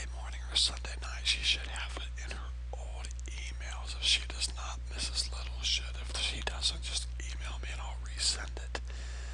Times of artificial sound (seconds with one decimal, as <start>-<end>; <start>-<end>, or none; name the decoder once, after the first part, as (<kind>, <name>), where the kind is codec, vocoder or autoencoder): none